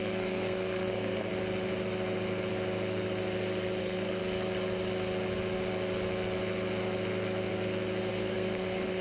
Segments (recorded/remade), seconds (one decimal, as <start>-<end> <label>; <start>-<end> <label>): 0.0-1.3 remade; 1.3-3.8 recorded; 3.8-4.2 remade; 4.2-8.1 recorded; 8.1-9.0 remade